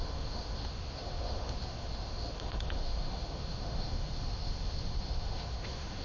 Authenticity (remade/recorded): remade